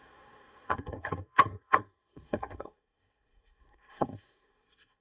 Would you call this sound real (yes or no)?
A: no